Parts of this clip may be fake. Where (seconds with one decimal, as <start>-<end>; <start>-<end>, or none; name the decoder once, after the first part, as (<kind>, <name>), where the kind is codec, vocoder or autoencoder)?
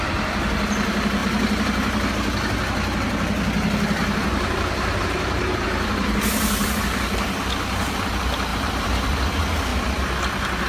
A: 1.2-2.1 (vocoder, BigVGAN v2); 4.0-7.4; 8.5-9.2